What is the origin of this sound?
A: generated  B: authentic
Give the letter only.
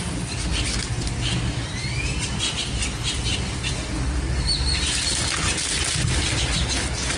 B